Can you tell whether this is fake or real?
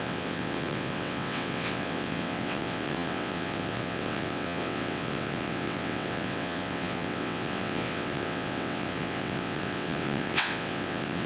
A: fake